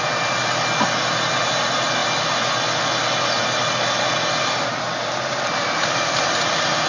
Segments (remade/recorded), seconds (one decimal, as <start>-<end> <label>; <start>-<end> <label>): 0.0-6.9 recorded